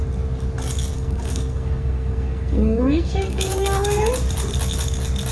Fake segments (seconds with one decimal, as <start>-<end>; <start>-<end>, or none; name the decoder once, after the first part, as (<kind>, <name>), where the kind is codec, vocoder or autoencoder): 0.9-4.1 (codec, SNAC)